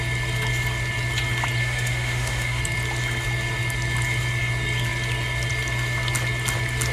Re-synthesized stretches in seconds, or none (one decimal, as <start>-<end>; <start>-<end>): 1.6-2.6